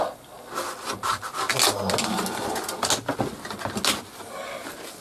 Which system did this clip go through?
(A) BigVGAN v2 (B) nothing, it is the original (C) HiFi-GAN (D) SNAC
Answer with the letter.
B